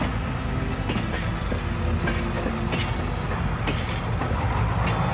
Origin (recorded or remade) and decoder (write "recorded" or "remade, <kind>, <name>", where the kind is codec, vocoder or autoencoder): recorded